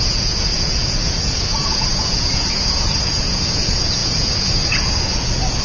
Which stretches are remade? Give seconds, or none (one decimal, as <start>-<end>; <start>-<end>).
0.0-5.6